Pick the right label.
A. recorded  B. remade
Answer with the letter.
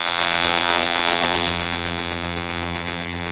B